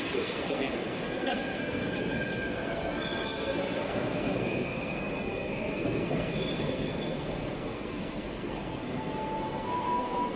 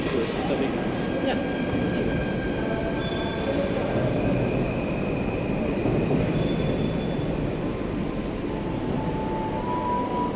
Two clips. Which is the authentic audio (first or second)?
second